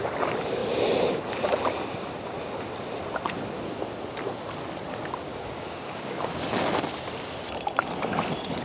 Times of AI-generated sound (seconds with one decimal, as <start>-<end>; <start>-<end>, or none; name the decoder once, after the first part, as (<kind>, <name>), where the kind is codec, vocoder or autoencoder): 5.3-6.3 (codec, DAC)